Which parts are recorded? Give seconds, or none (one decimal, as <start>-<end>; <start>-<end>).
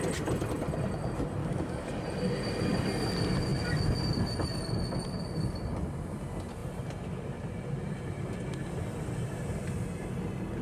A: 0.0-1.4; 2.0-10.6